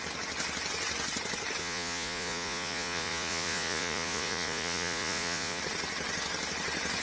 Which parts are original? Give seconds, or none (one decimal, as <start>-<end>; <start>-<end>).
0.0-1.6; 5.6-7.0